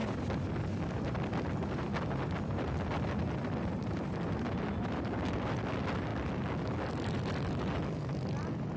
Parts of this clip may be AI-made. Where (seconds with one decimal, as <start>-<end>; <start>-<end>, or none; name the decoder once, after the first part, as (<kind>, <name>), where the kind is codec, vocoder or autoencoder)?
none